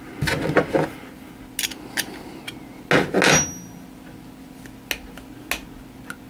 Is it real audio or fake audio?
real